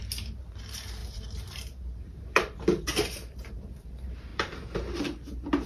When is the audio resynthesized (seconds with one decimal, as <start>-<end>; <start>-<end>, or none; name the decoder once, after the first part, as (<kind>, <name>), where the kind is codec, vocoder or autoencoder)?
0.0-5.7 (vocoder, BigVGAN v2)